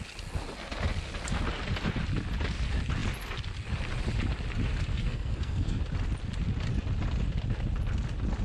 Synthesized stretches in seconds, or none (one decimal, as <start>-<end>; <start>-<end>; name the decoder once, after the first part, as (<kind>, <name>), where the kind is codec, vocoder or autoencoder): 4.9-5.8 (codec, SNAC)

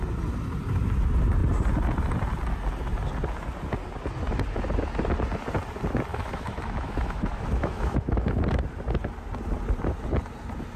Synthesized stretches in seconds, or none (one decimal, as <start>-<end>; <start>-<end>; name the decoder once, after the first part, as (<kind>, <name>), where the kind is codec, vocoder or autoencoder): 6.1-8.4 (autoencoder, DAC-VAE)